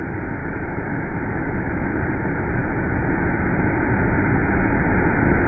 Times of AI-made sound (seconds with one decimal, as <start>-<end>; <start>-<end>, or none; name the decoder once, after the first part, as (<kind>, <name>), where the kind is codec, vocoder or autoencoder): 0.4-1.9 (autoencoder, DAC-VAE); 2.6-3.3